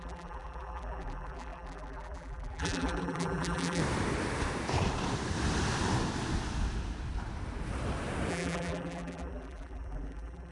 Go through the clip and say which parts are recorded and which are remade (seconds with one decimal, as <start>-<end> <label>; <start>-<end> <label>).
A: 0.0-3.8 remade; 3.8-8.3 recorded; 8.3-10.5 remade